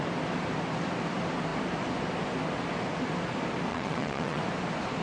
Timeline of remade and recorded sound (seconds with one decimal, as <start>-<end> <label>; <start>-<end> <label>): 0.0-3.7 recorded; 3.7-4.4 remade; 4.4-5.0 recorded